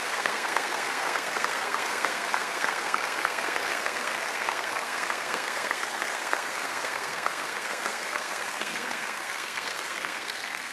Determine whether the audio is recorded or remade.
remade